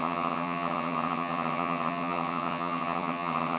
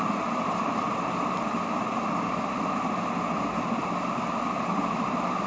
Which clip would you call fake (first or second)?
first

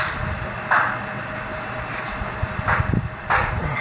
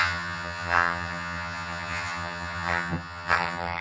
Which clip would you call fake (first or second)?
second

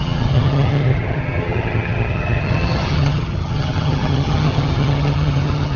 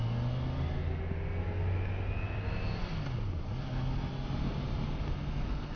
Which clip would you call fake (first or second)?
first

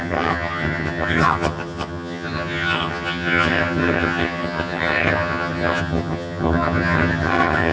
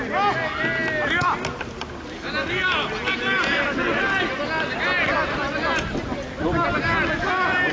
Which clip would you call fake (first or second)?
first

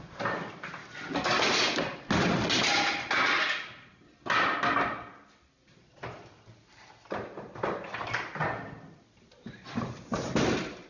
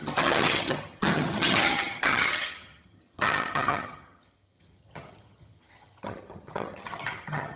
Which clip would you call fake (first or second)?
second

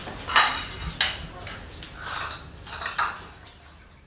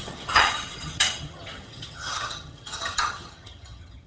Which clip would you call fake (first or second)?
second